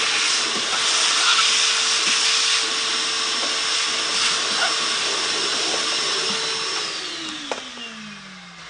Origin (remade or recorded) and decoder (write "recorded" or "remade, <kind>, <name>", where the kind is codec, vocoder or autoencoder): recorded